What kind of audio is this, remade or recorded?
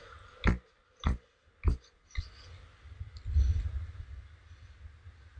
recorded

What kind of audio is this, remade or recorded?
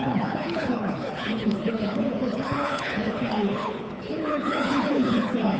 remade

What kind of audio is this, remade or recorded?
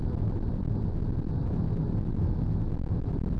recorded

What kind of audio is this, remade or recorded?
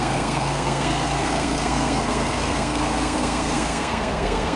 remade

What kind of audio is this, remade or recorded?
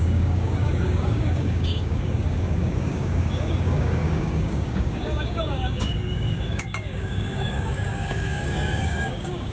remade